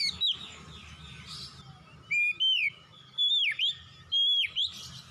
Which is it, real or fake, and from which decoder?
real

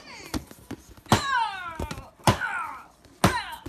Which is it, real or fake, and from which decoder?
real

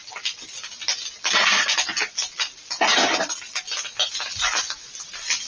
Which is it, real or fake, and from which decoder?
real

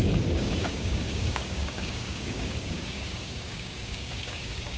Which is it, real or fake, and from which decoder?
fake, codec, DAC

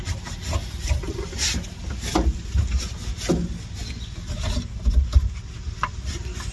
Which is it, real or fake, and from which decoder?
real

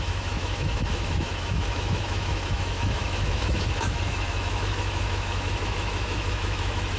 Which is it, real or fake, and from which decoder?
fake, autoencoder, DAC-VAE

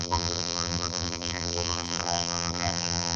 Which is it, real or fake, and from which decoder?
fake, vocoder, BigVGAN v2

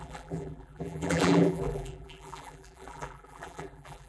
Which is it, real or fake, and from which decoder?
fake, vocoder, BigVGAN v2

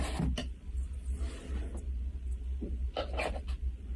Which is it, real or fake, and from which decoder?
real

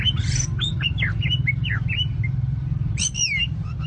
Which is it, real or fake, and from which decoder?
real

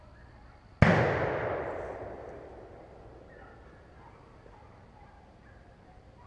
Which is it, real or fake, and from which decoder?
real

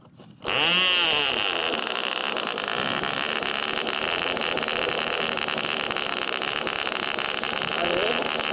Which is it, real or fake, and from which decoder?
real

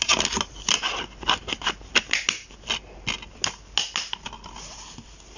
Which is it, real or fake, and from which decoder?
real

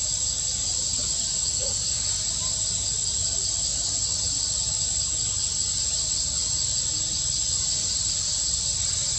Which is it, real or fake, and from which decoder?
real